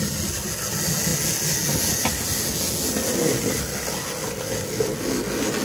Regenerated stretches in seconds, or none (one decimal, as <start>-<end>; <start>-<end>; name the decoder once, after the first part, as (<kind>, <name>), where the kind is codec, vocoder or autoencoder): none

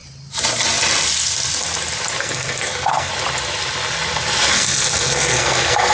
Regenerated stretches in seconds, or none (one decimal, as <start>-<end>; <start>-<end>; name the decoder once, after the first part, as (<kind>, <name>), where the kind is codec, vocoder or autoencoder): 2.2-3.1 (codec, SNAC); 4.5-5.9

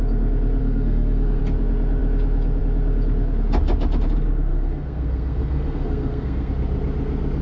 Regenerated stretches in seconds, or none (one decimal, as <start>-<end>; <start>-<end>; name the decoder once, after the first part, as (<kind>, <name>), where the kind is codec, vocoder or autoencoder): 0.6-1.4 (codec, SNAC); 4.5-6.5

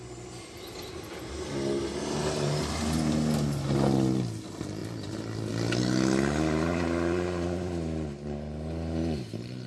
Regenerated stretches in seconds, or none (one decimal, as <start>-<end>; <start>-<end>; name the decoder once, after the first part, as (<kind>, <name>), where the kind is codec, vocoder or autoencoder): none

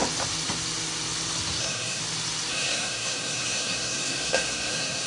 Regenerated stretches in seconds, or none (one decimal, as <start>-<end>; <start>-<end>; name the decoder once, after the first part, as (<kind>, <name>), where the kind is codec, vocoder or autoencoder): 1.6-2.0 (codec, SNAC); 2.5-5.1

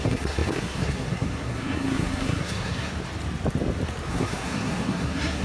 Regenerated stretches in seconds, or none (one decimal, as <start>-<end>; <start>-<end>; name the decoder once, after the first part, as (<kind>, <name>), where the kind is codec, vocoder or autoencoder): 0.0-2.9 (codec, SNAC); 4.1-5.4